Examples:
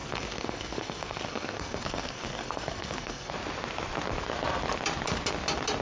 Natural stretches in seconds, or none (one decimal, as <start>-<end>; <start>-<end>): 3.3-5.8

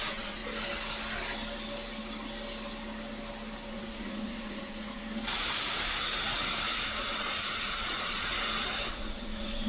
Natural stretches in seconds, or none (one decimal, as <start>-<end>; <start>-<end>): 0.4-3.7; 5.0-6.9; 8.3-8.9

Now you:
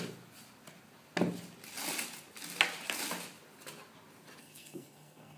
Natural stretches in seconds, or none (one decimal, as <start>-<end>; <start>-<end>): 0.0-4.4

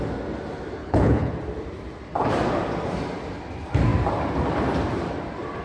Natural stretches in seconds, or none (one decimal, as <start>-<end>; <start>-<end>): 0.0-0.8; 1.3-5.6

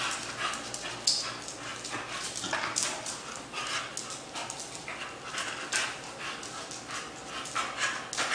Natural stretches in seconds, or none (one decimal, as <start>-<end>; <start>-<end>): 0.0-8.3